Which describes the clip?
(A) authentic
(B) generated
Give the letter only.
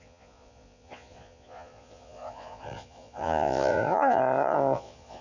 B